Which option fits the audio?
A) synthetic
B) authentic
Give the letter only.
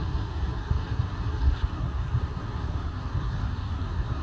A